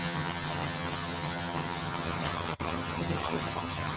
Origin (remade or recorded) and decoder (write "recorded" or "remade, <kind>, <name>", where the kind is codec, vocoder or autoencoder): remade, vocoder, HiFi-GAN